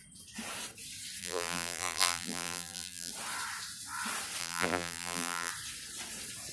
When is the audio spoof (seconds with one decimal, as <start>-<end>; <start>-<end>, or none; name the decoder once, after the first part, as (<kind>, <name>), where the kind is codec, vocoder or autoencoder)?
1.2-3.1 (vocoder, BigVGAN v2); 4.4-5.5